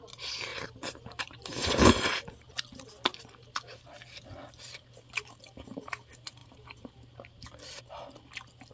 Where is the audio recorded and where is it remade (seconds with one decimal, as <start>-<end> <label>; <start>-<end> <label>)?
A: 0.0-0.5 recorded; 0.5-1.9 remade; 1.9-6.4 recorded; 6.4-7.8 remade; 7.8-8.7 recorded